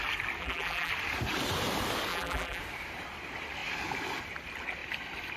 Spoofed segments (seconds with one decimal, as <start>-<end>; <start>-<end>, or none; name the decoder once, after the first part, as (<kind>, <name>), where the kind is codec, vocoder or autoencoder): 0.4-0.9 (vocoder, BigVGAN v2); 2.1-2.6